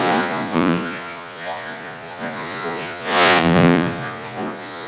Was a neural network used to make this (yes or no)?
yes